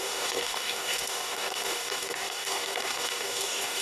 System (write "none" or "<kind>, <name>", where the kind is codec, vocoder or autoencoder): codec, DAC